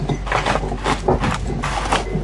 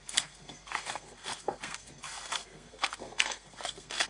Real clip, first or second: first